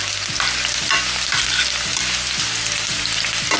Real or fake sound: real